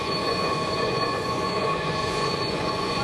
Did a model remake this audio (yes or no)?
yes